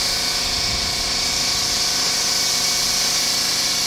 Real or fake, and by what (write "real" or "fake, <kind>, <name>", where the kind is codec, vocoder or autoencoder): real